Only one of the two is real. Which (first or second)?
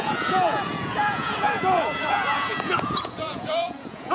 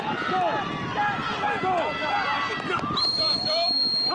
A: second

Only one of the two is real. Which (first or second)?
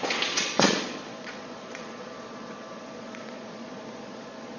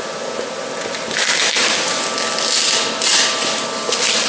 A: second